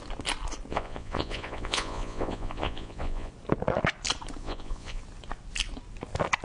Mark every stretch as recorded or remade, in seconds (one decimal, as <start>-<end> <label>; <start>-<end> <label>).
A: 0.0-0.7 recorded; 0.7-3.3 remade; 3.3-4.4 recorded; 4.4-5.0 remade; 5.0-6.4 recorded